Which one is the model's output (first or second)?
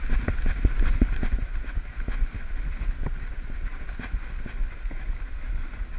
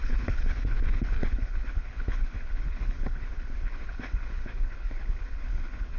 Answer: second